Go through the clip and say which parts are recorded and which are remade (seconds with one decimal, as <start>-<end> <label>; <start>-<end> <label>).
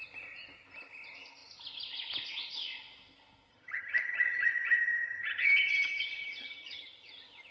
0.0-3.5 recorded; 3.5-6.8 remade; 6.8-7.5 recorded